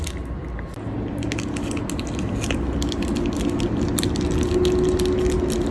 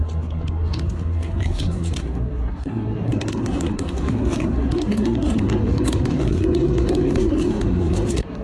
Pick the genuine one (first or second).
first